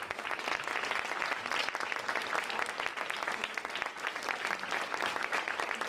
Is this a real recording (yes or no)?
yes